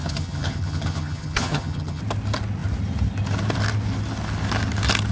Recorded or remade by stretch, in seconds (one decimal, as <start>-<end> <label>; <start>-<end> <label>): 0.0-2.0 remade; 2.0-5.1 recorded